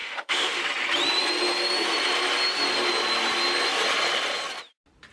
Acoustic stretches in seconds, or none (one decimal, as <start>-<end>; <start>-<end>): 0.6-5.1